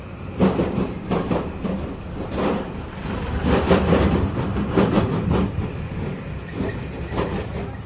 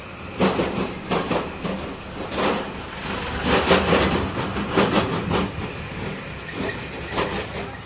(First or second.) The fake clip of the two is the first